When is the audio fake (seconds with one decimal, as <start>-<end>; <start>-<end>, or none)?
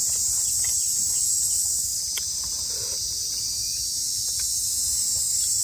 1.9-2.5; 4.9-5.6